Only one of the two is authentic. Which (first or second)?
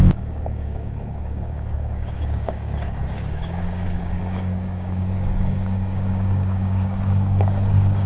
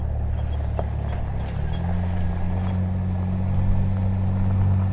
second